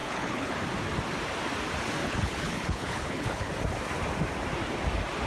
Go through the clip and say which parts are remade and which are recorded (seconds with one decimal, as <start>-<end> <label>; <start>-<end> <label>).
0.0-0.6 remade; 0.6-2.0 recorded; 2.0-3.5 remade; 3.5-5.3 recorded